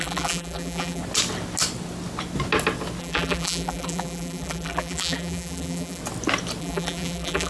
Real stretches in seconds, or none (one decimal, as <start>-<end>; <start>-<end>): 1.0-3.0; 6.0-6.6